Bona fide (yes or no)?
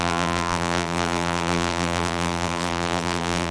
no